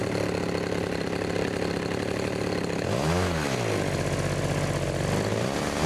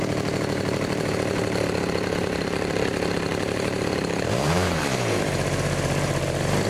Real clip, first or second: first